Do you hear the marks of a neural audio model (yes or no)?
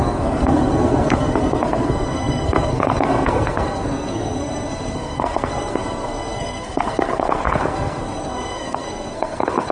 yes